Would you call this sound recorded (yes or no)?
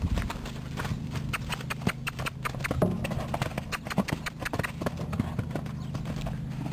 yes